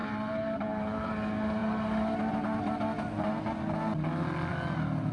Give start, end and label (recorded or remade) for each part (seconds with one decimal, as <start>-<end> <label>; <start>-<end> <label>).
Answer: 0.0-1.1 remade; 1.1-5.1 recorded